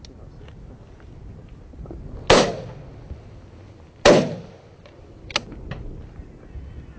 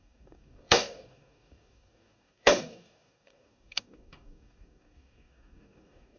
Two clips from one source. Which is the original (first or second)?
first